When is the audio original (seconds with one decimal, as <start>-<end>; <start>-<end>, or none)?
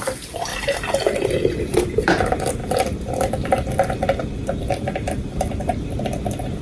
0.5-1.1; 5.7-6.6